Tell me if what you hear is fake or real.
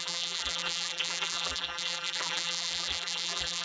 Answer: fake